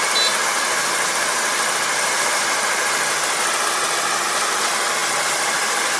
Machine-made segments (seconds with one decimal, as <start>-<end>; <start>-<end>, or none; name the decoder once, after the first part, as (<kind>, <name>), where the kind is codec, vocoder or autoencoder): none